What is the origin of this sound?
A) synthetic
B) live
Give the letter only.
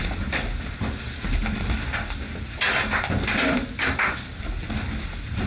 B